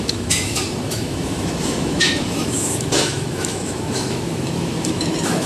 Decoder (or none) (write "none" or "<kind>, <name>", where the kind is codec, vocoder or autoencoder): autoencoder, DAC-VAE